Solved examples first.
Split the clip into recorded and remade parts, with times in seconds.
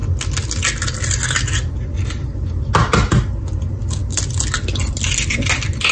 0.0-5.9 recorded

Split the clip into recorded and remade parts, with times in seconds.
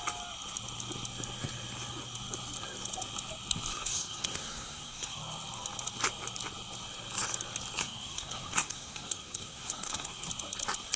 0.0-3.7 recorded; 3.7-5.2 remade; 5.2-7.8 recorded; 7.8-10.3 remade; 10.3-11.0 recorded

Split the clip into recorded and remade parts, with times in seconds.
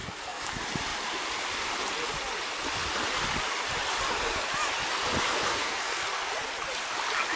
0.0-0.5 remade; 0.5-5.5 recorded; 5.5-6.3 remade; 6.3-7.4 recorded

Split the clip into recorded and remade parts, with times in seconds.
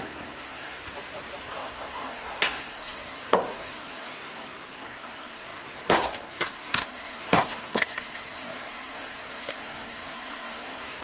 0.0-0.8 remade; 0.8-1.4 recorded; 1.4-11.0 remade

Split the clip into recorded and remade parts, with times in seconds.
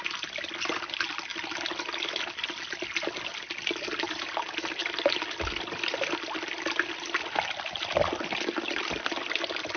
0.0-9.8 recorded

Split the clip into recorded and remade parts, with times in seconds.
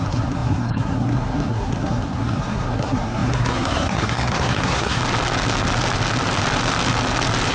0.0-5.0 remade; 5.0-7.5 recorded